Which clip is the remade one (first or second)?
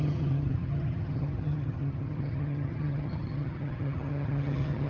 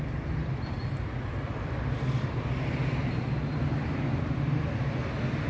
first